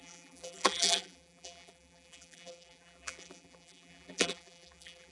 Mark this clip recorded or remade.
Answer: remade